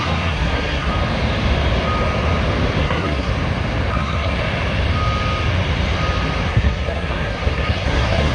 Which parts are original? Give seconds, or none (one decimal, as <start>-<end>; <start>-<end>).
0.9-2.8; 3.3-3.9; 4.4-6.5